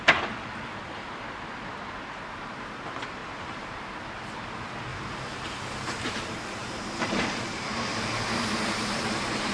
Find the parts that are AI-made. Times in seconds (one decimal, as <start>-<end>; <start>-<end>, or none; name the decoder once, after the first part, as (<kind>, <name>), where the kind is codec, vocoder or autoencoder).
3.2-4.1 (vocoder, BigVGAN v2); 4.9-9.1